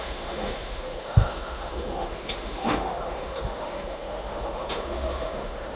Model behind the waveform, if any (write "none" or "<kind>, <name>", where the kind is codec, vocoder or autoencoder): autoencoder, DAC-VAE